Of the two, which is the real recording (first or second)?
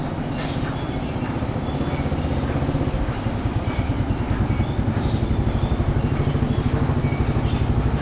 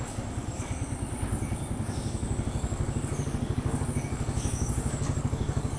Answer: first